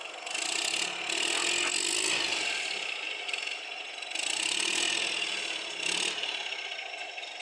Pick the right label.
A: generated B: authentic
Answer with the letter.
B